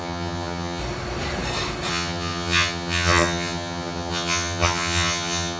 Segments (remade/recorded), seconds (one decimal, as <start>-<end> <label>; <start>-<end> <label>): 0.0-0.8 remade; 0.8-1.9 recorded; 1.9-5.6 remade